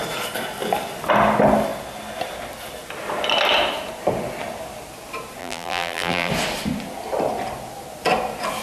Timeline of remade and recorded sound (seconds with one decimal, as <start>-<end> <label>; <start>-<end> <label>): 0.0-5.4 recorded; 5.4-6.3 remade; 6.3-8.6 recorded